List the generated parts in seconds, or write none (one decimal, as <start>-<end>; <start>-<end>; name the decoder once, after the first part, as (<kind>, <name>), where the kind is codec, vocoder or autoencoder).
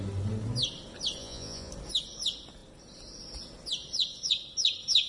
1.2-1.7 (vocoder, Vocos)